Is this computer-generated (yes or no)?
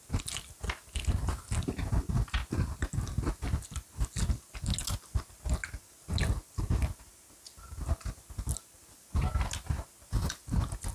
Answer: no